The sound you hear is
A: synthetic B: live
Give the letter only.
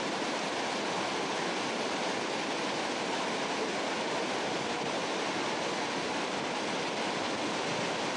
B